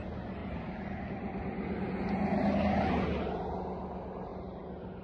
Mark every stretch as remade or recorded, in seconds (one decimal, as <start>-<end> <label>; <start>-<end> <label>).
0.0-0.4 recorded; 0.4-1.0 remade; 1.0-5.0 recorded